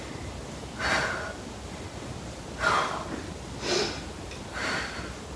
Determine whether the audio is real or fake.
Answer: real